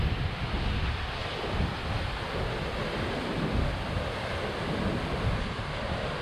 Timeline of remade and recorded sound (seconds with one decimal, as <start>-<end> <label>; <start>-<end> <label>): 0.0-6.2 recorded